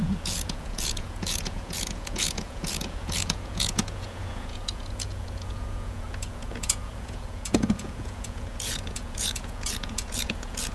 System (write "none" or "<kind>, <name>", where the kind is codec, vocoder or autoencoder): vocoder, Vocos